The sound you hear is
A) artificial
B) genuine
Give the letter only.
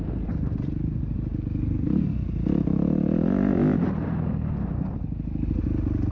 B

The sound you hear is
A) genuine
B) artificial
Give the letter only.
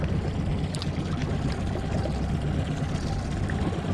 A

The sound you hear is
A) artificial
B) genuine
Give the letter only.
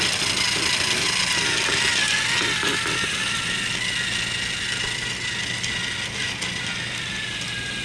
B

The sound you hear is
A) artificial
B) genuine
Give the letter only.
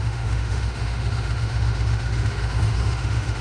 A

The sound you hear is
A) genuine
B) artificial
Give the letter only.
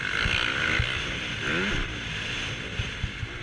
A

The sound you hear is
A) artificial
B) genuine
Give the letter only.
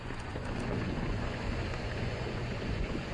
A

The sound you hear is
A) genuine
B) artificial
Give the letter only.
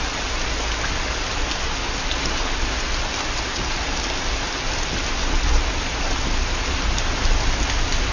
A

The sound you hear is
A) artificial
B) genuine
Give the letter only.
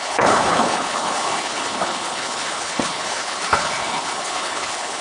A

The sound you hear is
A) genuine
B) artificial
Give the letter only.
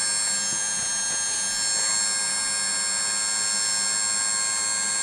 A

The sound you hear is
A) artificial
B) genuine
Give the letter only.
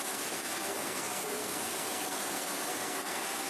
A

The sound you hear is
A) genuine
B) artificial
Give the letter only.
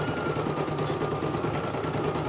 A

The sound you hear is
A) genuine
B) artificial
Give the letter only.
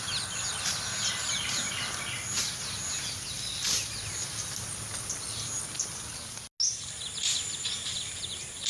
A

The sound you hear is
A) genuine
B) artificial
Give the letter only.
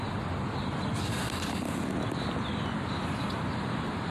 A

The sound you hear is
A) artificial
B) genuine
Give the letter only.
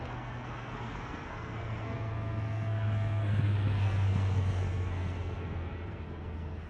A